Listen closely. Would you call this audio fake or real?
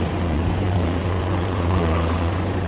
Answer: fake